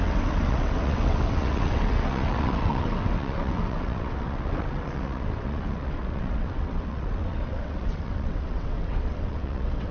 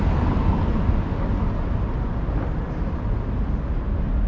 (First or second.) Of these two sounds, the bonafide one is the second